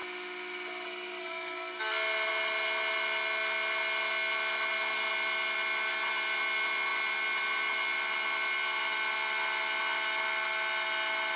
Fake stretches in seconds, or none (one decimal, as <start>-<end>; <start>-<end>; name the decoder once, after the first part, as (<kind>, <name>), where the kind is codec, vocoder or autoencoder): 1.2-1.8 (codec, SNAC)